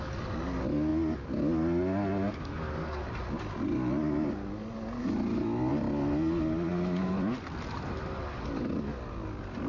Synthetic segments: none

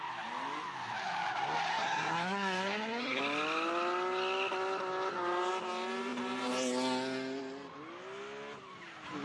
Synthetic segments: 1.7-3.2 (codec, SNAC)

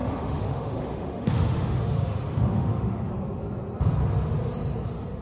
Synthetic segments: 0.0-3.1 (autoencoder, DAC-VAE)

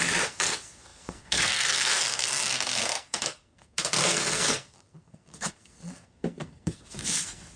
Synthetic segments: 0.0-7.6 (codec, SNAC)

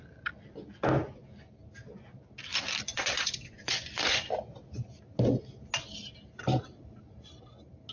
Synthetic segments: 2.9-4.3 (vocoder, Vocos)